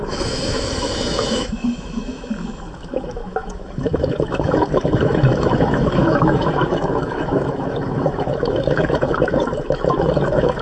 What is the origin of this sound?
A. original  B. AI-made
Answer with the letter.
B